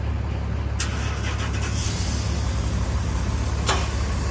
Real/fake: real